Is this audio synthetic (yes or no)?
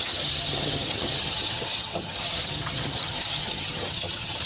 yes